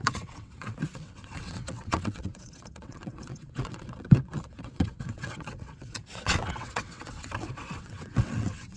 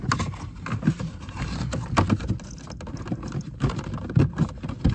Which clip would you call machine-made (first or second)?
first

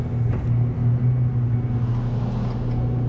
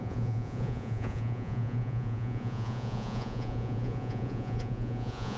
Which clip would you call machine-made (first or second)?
second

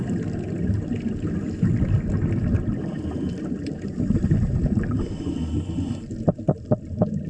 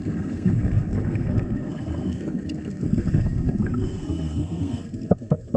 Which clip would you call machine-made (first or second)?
second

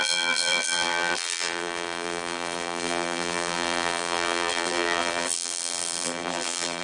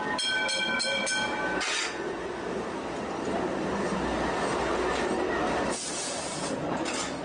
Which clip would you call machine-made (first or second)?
first